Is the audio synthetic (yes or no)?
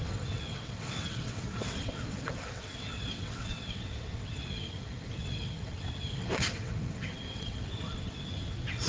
yes